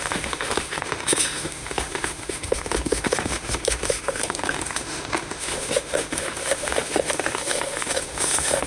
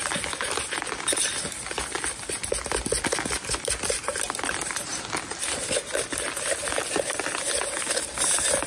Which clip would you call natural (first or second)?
second